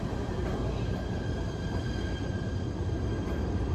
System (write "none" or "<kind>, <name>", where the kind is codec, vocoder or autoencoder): none